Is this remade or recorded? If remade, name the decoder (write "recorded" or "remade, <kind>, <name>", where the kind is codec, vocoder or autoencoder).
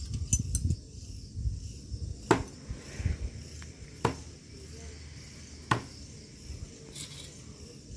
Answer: recorded